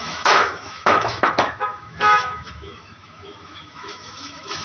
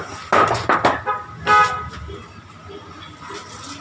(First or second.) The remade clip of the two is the first